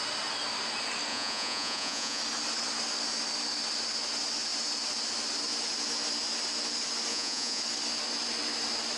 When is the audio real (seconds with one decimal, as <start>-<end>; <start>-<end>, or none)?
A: 0.0-1.1; 2.2-7.1; 7.6-9.0